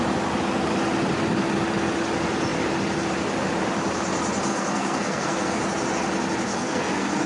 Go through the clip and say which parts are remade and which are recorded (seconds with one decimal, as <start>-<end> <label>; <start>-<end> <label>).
0.0-4.5 recorded; 4.5-5.6 remade; 5.6-6.5 recorded; 6.5-7.3 remade